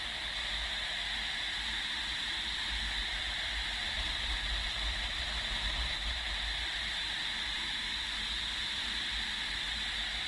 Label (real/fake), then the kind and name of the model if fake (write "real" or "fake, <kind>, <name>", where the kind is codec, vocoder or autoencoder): fake, vocoder, BigVGAN v2